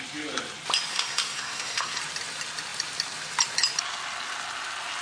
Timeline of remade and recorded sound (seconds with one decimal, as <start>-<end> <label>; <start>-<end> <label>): 0.0-0.9 recorded; 0.9-2.0 remade; 2.0-5.0 recorded